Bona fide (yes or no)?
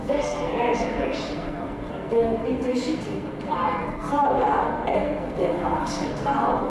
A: no